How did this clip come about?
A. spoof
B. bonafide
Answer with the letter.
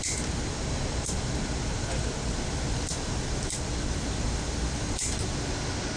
B